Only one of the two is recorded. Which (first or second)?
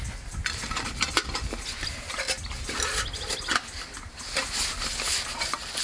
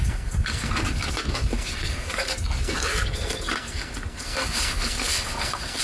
first